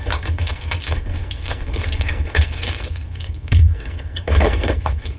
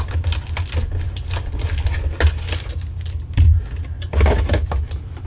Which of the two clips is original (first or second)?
second